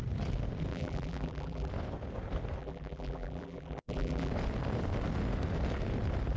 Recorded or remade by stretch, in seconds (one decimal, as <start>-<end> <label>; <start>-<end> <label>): 0.0-0.7 recorded; 0.7-1.7 remade; 1.7-2.6 recorded; 2.6-4.3 remade; 4.3-6.4 recorded